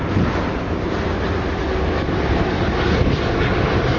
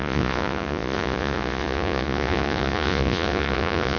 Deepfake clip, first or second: second